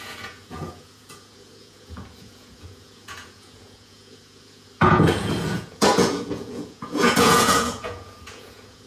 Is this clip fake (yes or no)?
yes